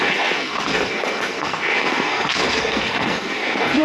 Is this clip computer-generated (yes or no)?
yes